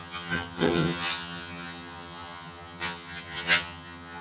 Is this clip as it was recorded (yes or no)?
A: no